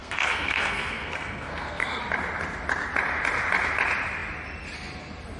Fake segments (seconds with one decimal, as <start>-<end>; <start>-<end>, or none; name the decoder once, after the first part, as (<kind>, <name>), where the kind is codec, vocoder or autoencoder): 0.0-2.0 (codec, SNAC)